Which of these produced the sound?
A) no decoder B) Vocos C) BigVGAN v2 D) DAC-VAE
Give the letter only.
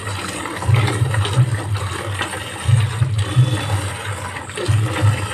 A